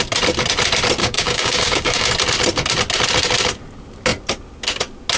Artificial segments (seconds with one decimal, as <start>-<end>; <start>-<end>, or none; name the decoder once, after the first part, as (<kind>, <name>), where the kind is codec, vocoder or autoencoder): 1.0-2.1 (codec, DAC)